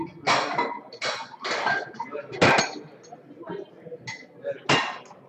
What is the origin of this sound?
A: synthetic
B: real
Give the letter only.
B